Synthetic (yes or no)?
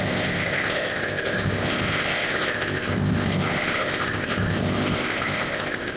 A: yes